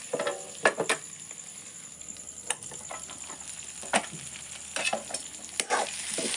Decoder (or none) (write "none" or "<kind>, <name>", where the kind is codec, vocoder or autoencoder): none